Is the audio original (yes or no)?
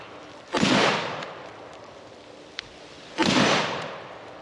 no